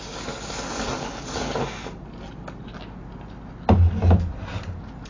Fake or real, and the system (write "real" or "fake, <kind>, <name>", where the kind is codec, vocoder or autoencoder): real